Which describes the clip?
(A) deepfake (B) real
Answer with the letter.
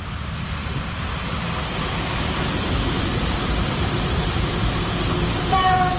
A